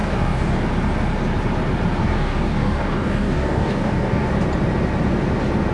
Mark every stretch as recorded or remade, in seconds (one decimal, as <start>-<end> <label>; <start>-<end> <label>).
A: 0.0-0.7 remade; 0.7-2.0 recorded; 2.0-4.3 remade; 4.3-5.7 recorded